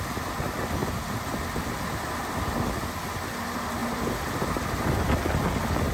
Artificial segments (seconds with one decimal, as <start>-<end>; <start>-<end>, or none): none